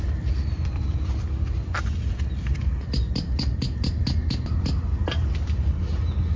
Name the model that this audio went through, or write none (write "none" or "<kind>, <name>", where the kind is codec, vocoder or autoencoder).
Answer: none